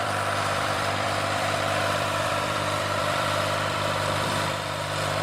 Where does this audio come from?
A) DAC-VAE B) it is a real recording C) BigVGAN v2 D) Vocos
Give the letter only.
C